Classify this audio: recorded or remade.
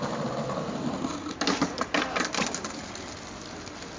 recorded